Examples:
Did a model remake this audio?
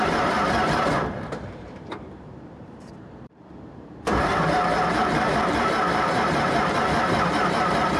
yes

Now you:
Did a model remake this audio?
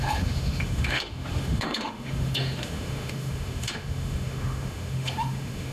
yes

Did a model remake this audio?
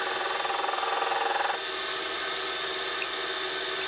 no